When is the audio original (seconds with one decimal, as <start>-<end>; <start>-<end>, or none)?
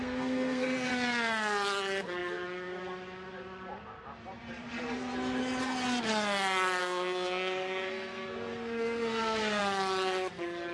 0.9-6.8; 9.6-10.7